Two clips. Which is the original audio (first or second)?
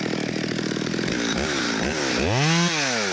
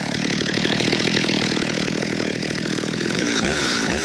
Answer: first